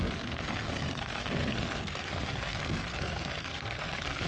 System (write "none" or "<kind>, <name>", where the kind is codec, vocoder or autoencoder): codec, SNAC